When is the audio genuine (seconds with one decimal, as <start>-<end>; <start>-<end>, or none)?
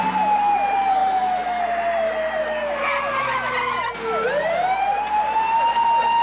0.0-1.0; 1.6-6.2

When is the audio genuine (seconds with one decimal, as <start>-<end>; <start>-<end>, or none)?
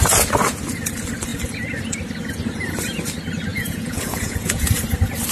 0.0-3.5; 4.7-5.3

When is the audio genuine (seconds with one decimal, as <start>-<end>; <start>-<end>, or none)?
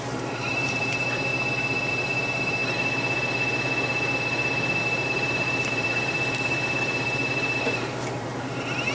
1.3-1.9; 2.6-4.8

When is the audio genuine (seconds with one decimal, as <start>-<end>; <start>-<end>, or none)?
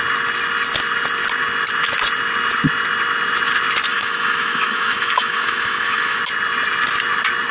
0.0-3.9; 6.2-7.5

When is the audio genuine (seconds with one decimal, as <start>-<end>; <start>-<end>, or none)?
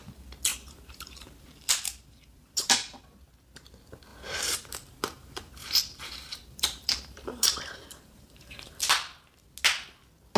0.0-0.5; 3.2-4.1; 8.8-10.4